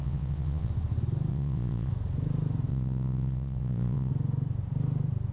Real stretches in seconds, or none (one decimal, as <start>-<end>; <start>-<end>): 0.7-1.3; 1.9-2.7; 4.1-5.3